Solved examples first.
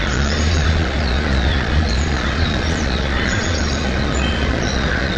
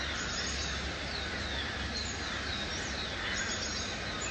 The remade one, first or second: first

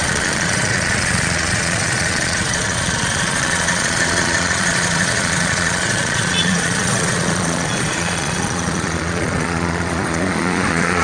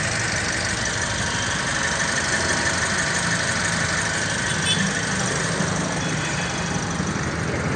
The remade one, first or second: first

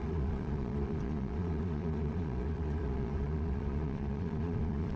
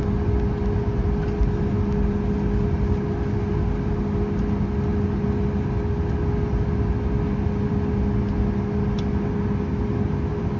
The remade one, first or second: first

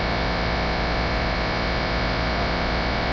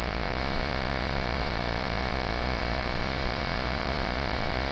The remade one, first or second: second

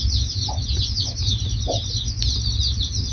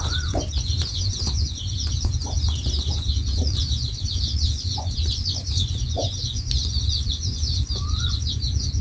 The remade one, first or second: second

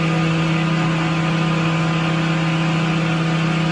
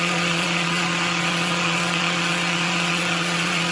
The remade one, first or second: second